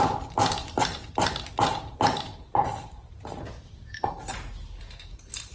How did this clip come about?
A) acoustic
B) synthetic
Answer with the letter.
A